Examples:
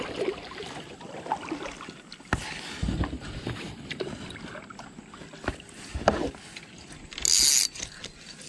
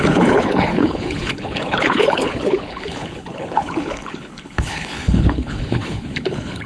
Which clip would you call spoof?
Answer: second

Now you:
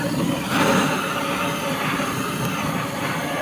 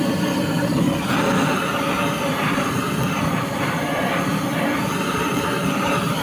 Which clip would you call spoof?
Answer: first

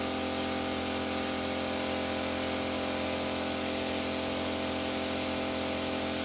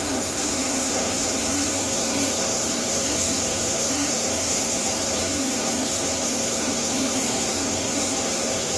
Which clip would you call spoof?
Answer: second